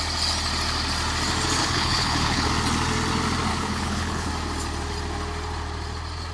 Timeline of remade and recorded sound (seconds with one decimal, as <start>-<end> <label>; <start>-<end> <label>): 0.0-1.6 recorded; 1.6-2.5 remade; 2.5-3.5 recorded; 3.5-4.3 remade; 4.3-6.3 recorded